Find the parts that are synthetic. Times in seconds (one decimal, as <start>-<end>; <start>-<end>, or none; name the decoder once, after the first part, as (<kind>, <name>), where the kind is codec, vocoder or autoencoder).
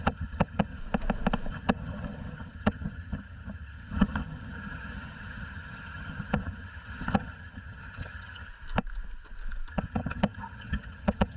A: 0.0-0.8 (vocoder, HiFi-GAN); 1.5-8.5; 9.7-11.4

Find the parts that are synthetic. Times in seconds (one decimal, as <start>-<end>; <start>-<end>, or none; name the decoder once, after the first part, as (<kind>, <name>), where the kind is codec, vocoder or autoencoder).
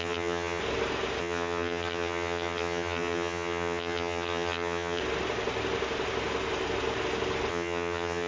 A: 0.0-0.6 (vocoder, HiFi-GAN); 1.2-5.0; 7.5-8.3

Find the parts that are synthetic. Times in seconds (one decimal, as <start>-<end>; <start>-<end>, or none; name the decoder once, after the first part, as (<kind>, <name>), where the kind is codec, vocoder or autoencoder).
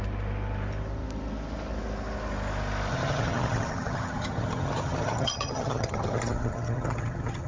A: 2.9-7.5 (vocoder, HiFi-GAN)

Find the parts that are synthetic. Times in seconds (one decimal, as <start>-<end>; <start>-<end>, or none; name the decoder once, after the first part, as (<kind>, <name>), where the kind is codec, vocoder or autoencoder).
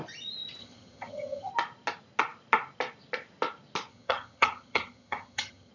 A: 0.6-1.5 (vocoder, HiFi-GAN); 3.9-5.7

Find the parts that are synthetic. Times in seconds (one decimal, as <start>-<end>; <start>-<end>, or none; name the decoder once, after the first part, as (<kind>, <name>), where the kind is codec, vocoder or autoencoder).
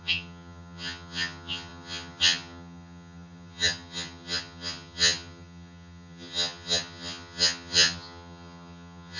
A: 0.0-9.2 (vocoder, HiFi-GAN)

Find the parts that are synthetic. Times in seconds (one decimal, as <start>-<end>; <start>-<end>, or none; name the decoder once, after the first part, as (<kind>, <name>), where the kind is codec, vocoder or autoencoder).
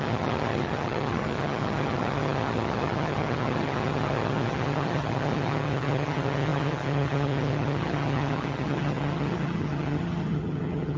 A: 0.0-11.0 (vocoder, HiFi-GAN)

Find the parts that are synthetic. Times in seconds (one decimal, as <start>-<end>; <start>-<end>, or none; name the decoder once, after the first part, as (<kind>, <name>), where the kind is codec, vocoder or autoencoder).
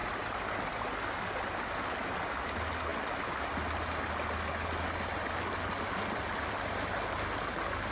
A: none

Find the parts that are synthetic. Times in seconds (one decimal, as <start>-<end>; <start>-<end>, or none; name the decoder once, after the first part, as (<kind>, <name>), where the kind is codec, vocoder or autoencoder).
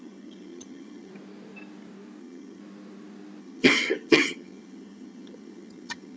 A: 0.0-1.1 (vocoder, HiFi-GAN); 2.2-2.6; 3.4-6.2